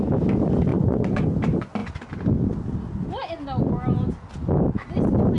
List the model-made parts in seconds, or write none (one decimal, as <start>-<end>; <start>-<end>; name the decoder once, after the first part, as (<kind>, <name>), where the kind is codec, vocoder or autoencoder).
0.7-1.2 (vocoder, Vocos)

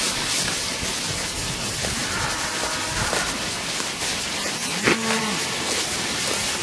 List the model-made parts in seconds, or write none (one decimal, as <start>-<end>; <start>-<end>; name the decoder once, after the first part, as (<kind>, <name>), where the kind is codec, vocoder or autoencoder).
none